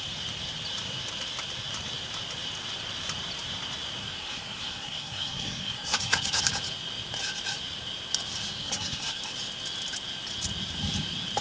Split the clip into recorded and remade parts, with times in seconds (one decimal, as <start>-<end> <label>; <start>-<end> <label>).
0.0-4.0 recorded; 4.0-6.4 remade; 6.4-8.6 recorded; 8.6-9.2 remade; 9.2-11.4 recorded